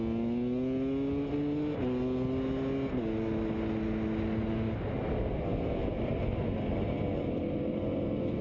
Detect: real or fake real